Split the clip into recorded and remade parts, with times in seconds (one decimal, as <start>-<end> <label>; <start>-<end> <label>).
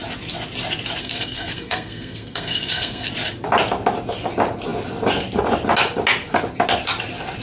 0.0-1.0 recorded; 1.0-3.1 remade; 3.1-7.4 recorded